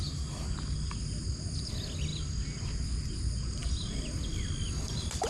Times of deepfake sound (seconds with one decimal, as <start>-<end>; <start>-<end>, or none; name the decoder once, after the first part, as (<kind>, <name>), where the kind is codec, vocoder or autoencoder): none